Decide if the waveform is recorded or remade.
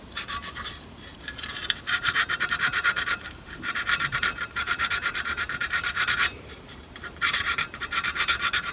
remade